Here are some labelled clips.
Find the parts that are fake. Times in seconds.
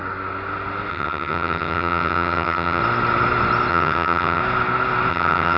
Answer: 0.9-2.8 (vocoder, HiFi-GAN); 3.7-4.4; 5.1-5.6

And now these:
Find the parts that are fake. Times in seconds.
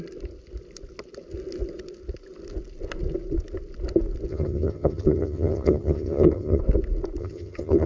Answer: 4.3-6.6 (vocoder, HiFi-GAN); 7.2-7.9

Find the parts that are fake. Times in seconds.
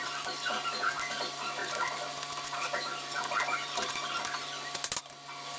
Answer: none